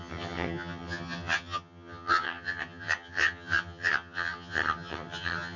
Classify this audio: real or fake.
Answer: fake